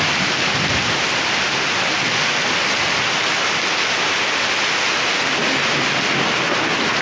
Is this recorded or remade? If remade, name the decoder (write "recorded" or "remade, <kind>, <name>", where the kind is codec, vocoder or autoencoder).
recorded